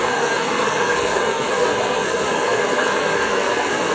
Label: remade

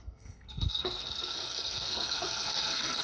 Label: remade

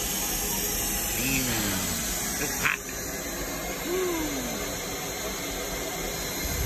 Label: recorded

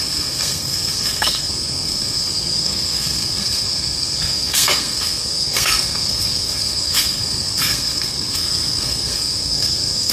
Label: remade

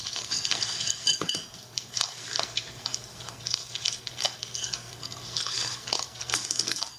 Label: remade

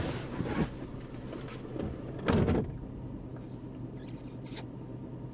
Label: recorded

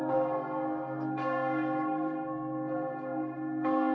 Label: remade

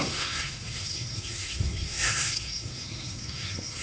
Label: remade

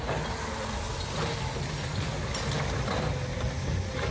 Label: recorded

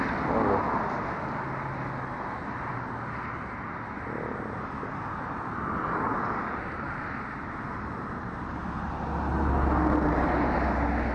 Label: recorded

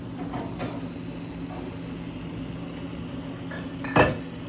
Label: recorded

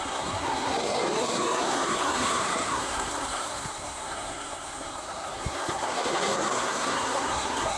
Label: remade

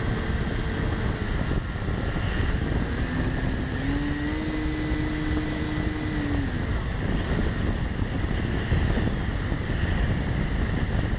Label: recorded